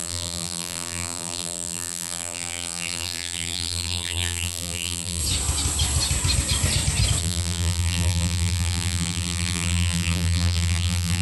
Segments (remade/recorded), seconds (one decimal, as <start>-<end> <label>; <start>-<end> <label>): 0.0-5.2 remade; 5.2-7.2 recorded; 7.2-11.2 remade